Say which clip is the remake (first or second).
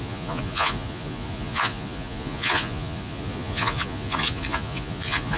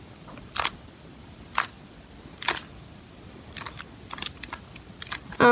first